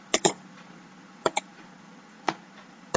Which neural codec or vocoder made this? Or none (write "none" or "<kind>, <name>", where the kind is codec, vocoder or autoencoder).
vocoder, Vocos